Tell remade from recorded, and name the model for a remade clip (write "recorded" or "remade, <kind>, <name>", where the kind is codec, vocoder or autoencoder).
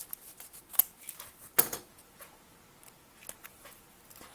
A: recorded